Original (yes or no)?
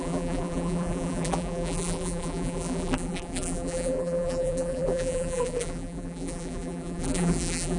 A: no